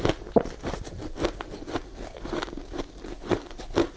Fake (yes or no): no